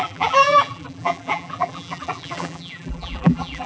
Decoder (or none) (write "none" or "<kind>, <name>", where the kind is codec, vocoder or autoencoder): vocoder, BigVGAN v2